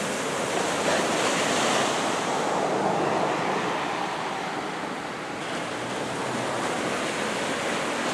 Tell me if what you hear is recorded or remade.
recorded